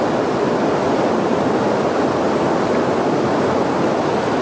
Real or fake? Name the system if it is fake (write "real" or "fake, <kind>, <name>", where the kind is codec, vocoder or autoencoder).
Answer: real